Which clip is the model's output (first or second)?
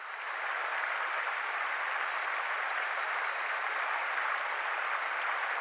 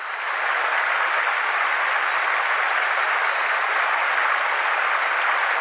first